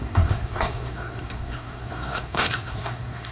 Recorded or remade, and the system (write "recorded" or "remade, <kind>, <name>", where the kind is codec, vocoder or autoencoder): remade, codec, SNAC